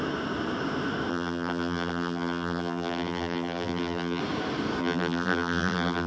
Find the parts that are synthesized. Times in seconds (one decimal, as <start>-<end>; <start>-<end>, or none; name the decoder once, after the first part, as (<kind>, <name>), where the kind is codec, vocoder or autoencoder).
1.1-4.2 (vocoder, BigVGAN v2); 4.8-6.1

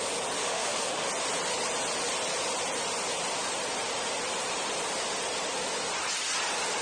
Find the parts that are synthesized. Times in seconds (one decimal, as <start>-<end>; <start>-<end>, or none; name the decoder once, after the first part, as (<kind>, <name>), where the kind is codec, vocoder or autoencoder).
0.4-1.1 (autoencoder, DAC-VAE)

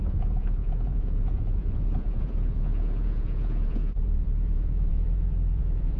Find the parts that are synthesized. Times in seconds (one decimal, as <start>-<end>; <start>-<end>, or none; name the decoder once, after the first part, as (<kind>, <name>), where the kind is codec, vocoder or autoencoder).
0.0-6.0 (vocoder, Vocos)

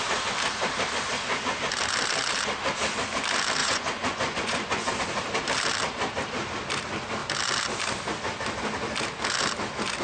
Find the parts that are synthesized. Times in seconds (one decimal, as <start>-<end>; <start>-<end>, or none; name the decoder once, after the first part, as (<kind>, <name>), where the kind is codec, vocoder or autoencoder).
3.6-4.9 (vocoder, Vocos)

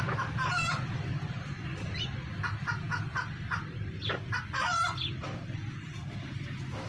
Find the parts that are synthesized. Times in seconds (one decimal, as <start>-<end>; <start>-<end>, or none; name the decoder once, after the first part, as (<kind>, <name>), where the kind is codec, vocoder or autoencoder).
none

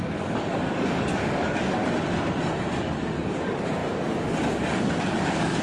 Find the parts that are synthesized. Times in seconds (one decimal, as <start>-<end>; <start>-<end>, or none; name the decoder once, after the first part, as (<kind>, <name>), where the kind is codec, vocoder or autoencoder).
0.0-1.8 (codec, DAC); 2.8-5.6

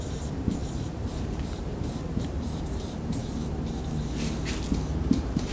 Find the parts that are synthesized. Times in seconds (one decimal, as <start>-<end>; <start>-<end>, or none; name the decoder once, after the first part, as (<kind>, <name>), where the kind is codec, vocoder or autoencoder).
0.0-3.2 (vocoder, BigVGAN v2); 5.0-5.5

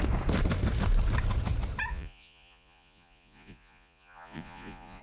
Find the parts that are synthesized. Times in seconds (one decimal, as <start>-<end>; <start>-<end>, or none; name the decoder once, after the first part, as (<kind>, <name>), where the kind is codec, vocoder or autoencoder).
1.9-5.0 (vocoder, Vocos)